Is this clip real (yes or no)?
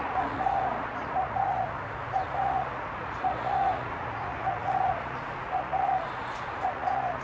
no